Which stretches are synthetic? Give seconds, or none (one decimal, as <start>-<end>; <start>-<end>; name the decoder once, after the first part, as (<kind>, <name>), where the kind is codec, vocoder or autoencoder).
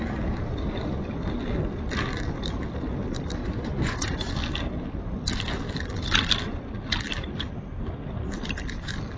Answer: 3.4-4.3 (vocoder, Vocos)